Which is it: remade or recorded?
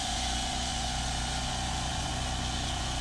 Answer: remade